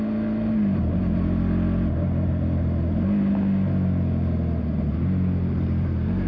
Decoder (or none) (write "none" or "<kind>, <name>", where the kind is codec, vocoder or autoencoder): none